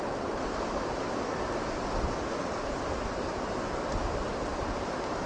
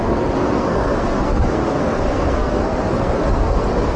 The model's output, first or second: second